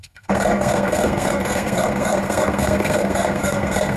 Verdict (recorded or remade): remade